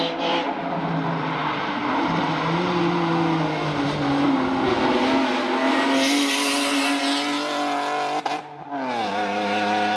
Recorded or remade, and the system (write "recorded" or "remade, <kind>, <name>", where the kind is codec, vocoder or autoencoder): recorded